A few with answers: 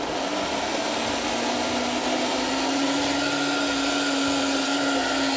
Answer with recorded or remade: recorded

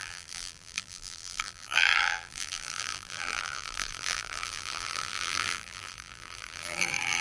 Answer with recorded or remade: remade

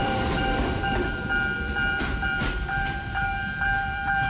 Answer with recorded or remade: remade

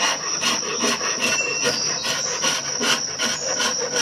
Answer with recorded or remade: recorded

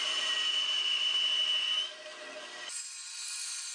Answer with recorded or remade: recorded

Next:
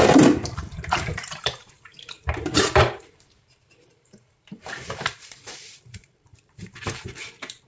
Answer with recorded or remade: remade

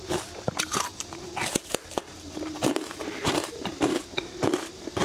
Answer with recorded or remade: remade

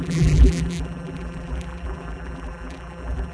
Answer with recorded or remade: remade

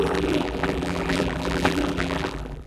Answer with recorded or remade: remade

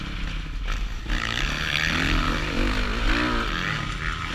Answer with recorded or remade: recorded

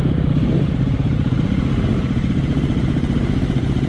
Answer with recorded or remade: remade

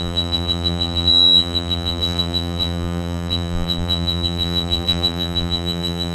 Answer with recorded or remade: remade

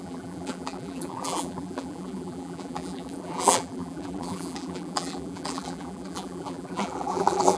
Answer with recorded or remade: remade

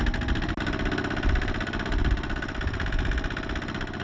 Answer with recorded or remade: recorded